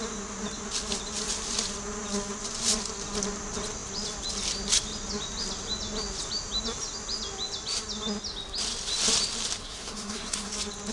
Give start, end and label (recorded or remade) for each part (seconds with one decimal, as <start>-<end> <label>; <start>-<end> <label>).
0.0-9.6 recorded; 9.6-10.5 remade; 10.5-10.9 recorded